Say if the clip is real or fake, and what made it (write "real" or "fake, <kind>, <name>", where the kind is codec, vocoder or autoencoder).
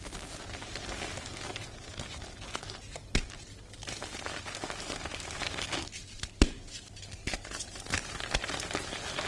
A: real